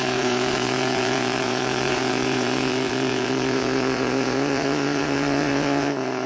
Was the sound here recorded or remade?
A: remade